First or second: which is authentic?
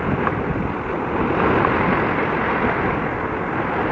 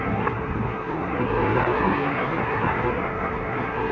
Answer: first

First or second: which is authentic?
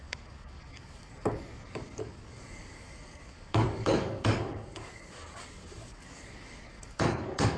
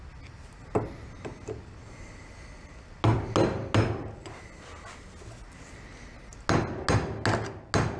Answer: second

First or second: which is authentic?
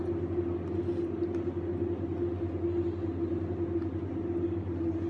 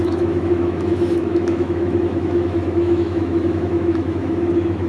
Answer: first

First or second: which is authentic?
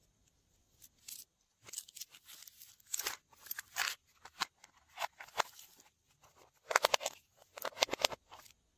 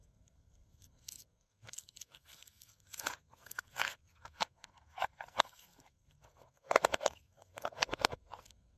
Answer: first